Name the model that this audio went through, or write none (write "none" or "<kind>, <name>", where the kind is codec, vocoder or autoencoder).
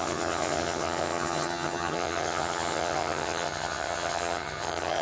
vocoder, HiFi-GAN